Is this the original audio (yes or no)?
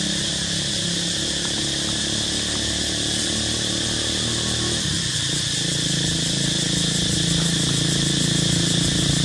yes